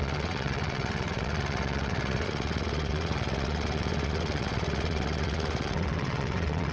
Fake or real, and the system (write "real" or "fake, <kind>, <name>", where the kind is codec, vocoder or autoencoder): fake, vocoder, WaveNeXt